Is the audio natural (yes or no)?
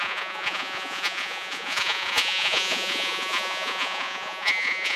no